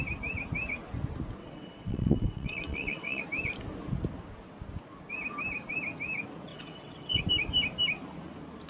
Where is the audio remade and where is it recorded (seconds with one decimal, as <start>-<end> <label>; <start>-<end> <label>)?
0.0-1.4 recorded; 1.4-3.2 remade; 3.2-6.5 recorded; 6.5-7.2 remade; 7.2-8.7 recorded